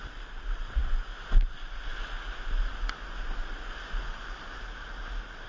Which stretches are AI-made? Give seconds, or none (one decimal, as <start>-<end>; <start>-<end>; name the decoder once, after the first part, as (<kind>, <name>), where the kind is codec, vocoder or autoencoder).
none